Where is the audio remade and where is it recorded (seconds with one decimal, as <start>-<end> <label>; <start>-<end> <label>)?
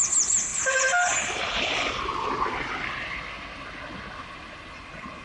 0.0-5.2 recorded